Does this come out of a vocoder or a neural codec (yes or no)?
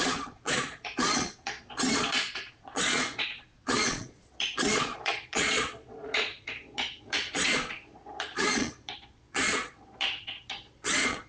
yes